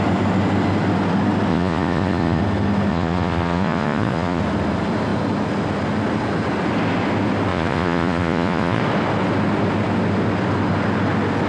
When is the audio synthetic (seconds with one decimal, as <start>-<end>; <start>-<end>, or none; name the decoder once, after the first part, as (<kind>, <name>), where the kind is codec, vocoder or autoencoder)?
1.5-2.4 (vocoder, Vocos); 2.9-4.4; 7.5-8.8